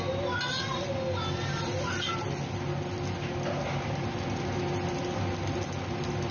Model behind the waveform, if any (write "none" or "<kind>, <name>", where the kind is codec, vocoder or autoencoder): none